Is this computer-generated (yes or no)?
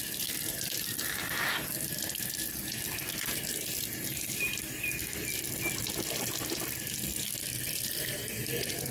no